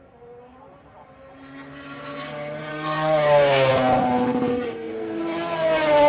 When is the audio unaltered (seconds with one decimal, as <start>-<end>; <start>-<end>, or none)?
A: 0.0-2.7; 3.7-4.5; 5.2-6.1